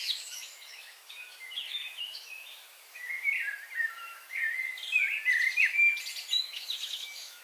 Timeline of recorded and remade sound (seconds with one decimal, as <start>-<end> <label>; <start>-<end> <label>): 0.0-3.3 remade; 3.3-3.8 recorded; 3.8-4.4 remade; 4.4-6.4 recorded; 6.4-7.4 remade